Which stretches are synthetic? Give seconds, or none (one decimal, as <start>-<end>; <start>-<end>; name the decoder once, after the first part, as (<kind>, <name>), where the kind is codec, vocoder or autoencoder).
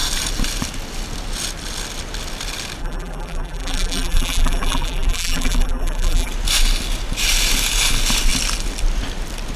2.8-6.3 (vocoder, BigVGAN v2)